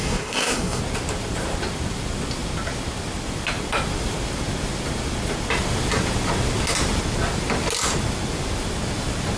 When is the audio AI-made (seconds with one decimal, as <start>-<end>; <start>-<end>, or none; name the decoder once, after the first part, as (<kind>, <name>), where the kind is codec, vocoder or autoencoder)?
0.0-0.8 (codec, SNAC)